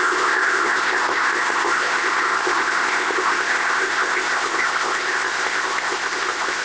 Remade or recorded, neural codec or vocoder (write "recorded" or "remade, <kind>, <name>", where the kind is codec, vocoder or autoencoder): remade, codec, ZipCodec